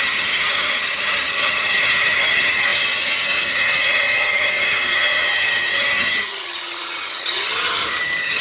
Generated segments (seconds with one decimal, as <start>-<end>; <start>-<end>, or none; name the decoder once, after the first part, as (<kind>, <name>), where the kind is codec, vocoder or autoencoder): 0.0-8.4 (vocoder, HiFi-GAN)